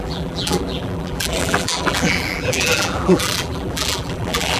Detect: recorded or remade remade